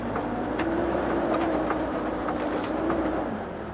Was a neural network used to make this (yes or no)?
yes